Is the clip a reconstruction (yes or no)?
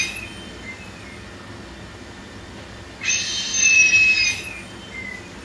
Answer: no